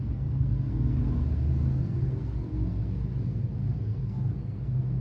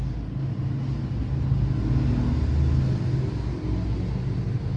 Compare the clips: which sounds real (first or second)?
second